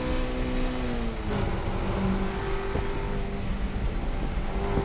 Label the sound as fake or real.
real